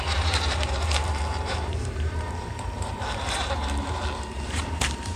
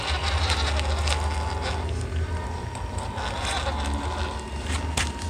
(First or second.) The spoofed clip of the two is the first